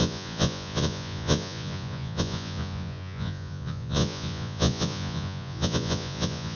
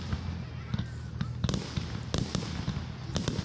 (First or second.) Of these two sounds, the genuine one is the second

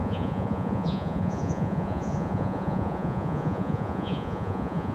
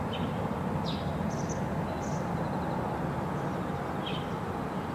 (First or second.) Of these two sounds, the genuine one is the second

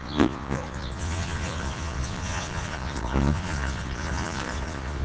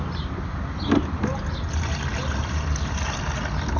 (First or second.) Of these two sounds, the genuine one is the second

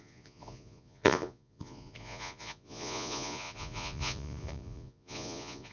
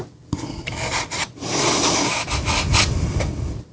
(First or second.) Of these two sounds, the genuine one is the second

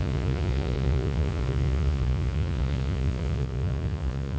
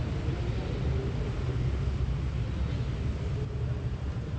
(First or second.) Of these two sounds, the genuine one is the second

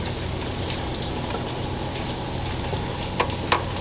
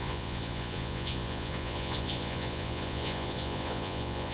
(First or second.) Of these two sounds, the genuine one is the first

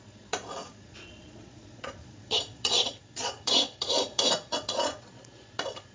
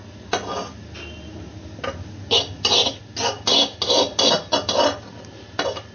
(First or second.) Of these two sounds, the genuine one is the second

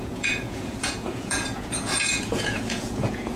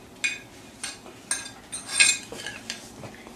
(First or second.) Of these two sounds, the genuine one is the second